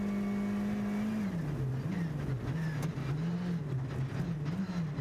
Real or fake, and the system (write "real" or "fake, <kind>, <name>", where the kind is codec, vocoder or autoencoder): real